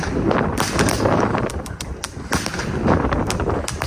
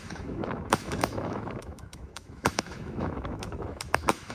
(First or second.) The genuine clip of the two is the first